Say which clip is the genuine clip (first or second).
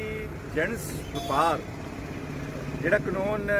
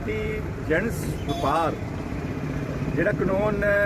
first